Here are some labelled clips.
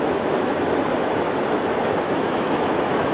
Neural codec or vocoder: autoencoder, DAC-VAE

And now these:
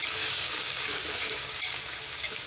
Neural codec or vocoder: codec, DAC